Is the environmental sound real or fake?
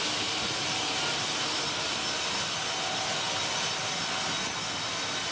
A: real